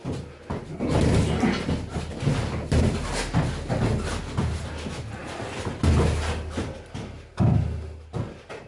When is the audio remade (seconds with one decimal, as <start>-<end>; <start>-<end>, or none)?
none